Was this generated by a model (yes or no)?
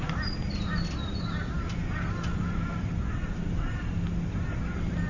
no